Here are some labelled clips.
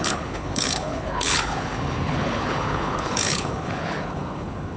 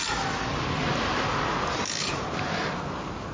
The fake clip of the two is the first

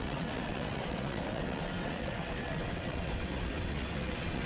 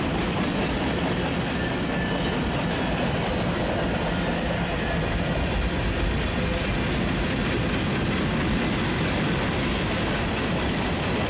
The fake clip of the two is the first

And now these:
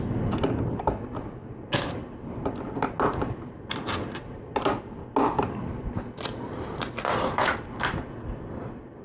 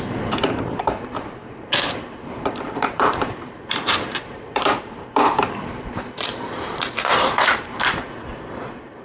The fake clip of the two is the second